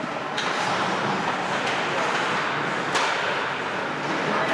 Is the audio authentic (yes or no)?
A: yes